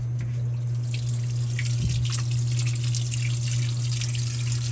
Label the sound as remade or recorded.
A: recorded